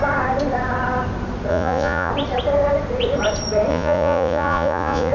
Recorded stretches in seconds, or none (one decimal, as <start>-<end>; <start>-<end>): 0.0-1.5; 2.1-3.7